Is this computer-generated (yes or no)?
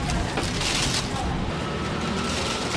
no